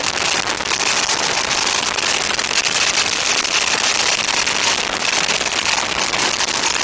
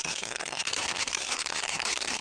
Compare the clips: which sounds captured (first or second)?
first